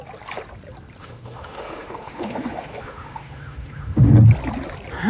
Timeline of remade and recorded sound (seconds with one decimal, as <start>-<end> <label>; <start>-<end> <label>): 0.0-1.0 recorded; 1.0-4.1 remade; 4.1-5.1 recorded